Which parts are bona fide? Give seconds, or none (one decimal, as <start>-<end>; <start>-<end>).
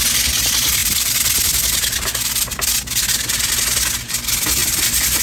0.0-5.2